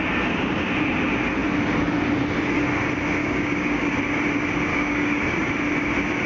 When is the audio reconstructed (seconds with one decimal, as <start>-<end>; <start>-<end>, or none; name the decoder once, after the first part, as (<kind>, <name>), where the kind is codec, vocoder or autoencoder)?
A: 3.2-3.9 (codec, DAC); 4.7-5.5